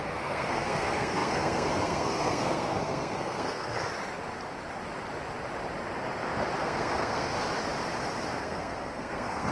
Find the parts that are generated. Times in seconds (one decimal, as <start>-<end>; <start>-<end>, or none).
0.0-3.8; 6.6-7.3; 8.4-9.5